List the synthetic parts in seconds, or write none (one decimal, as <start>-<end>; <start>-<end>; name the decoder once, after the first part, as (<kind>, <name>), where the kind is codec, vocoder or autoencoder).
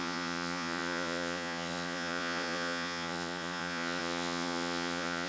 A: 0.0-5.3 (vocoder, Vocos)